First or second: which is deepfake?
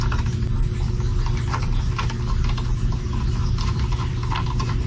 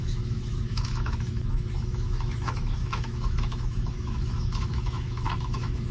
second